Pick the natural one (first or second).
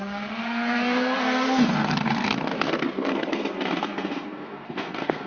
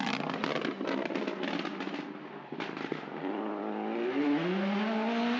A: second